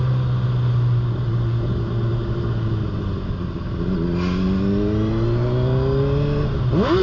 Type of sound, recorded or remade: recorded